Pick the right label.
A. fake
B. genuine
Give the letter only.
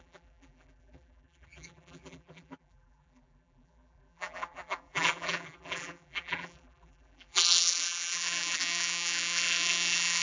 A